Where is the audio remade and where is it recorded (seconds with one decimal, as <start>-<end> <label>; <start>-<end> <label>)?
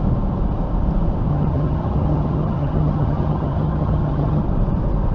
0.0-1.3 recorded; 1.3-4.4 remade; 4.4-5.1 recorded